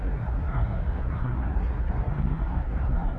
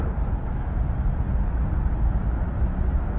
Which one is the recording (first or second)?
second